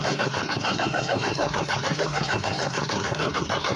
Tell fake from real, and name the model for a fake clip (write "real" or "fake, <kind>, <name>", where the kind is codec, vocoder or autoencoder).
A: fake, codec, SNAC